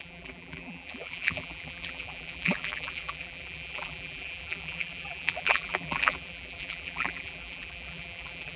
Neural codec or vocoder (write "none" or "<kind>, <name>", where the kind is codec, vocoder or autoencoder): vocoder, BigVGAN v2